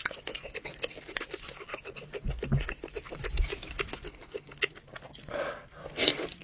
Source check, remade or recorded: recorded